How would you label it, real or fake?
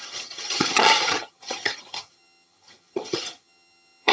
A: fake